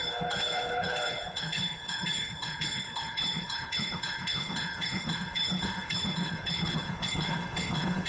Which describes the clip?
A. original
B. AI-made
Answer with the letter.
B